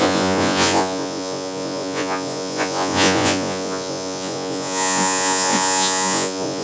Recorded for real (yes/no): no